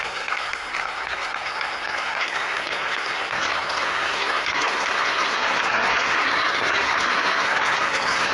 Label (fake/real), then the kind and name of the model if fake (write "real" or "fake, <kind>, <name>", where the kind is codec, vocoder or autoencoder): fake, codec, SNAC